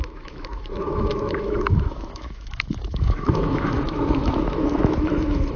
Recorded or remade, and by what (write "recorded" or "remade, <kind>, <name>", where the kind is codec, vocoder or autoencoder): remade, autoencoder, DAC-VAE